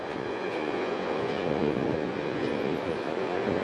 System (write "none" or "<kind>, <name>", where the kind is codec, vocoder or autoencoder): vocoder, Vocos